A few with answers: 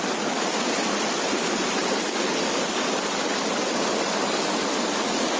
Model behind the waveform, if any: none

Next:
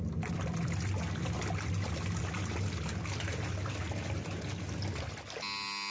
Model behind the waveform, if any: none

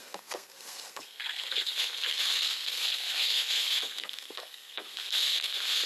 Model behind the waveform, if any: codec, SNAC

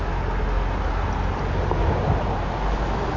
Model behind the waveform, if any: none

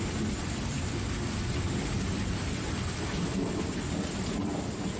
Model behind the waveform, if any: none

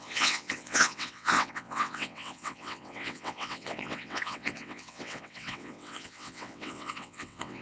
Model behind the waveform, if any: vocoder, WaveNeXt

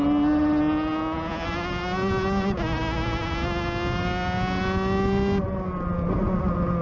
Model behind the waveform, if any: none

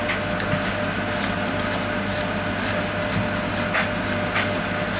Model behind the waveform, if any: none